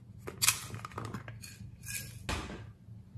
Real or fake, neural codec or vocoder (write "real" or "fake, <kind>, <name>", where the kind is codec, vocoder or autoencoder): real